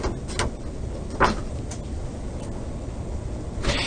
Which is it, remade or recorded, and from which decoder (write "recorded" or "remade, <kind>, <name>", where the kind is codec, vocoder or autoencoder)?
recorded